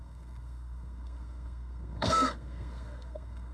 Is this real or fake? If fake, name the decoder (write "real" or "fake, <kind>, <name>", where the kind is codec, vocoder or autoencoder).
fake, codec, SNAC